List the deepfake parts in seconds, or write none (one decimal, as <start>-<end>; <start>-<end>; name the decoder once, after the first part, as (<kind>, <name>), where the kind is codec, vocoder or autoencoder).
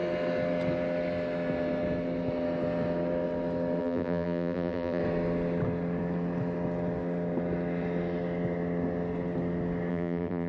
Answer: 3.8-5.0 (vocoder, BigVGAN v2); 9.9-10.5